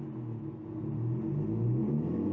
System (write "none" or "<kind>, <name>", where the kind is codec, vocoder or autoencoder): none